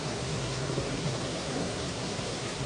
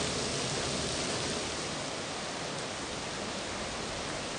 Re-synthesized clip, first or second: first